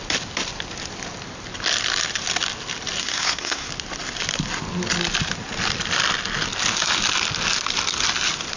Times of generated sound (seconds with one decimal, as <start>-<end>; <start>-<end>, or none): 3.0-3.7

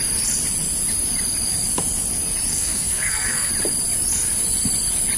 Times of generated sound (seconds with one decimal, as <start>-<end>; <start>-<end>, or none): 2.5-3.5

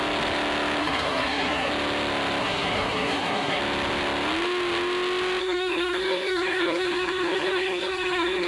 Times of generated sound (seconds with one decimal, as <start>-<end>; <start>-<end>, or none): 0.8-1.7; 2.4-3.6; 5.4-8.5

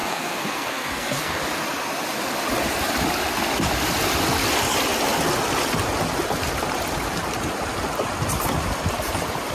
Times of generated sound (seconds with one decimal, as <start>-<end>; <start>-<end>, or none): 0.0-1.4

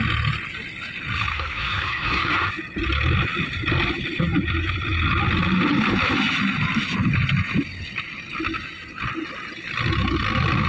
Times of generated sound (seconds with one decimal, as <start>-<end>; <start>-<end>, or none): 1.3-2.5

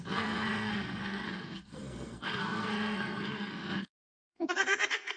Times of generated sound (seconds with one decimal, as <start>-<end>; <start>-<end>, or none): 0.0-5.2